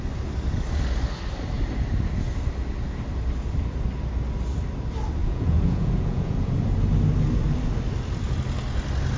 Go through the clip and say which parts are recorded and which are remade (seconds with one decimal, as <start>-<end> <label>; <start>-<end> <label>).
0.0-5.2 recorded; 5.2-6.5 remade; 6.5-9.2 recorded